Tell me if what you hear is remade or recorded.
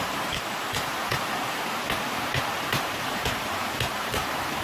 remade